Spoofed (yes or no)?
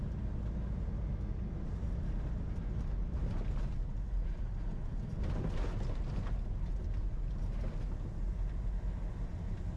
no